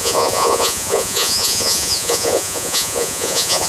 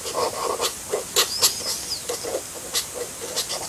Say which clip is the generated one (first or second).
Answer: first